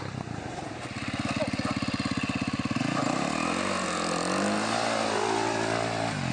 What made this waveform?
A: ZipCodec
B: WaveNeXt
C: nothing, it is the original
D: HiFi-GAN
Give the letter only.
C